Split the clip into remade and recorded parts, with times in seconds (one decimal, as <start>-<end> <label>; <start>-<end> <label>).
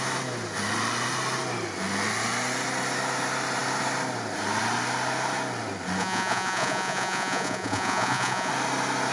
0.0-6.0 recorded; 6.0-8.5 remade; 8.5-9.1 recorded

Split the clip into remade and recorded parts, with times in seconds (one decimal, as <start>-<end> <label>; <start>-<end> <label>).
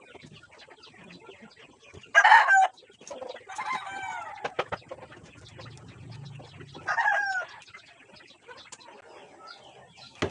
0.0-10.3 recorded